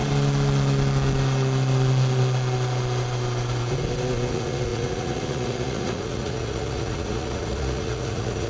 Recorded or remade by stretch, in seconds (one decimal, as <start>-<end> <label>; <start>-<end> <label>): 0.0-4.3 recorded; 4.3-8.5 remade